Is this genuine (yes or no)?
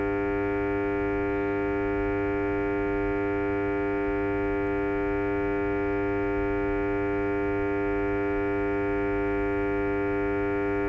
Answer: yes